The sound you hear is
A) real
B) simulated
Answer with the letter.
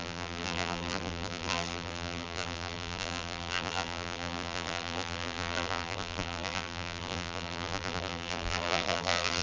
B